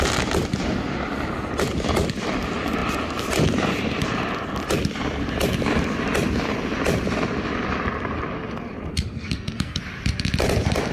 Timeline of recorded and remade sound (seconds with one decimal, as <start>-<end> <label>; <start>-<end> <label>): 0.0-8.9 recorded; 8.9-9.8 remade; 9.8-10.9 recorded